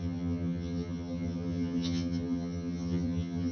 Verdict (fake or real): fake